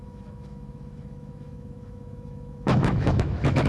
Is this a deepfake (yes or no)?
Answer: yes